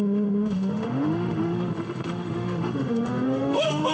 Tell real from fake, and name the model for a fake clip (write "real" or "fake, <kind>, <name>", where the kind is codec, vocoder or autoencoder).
fake, autoencoder, DAC-VAE